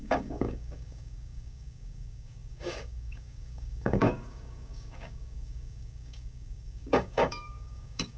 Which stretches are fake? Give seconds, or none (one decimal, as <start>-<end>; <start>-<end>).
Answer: 0.0-8.2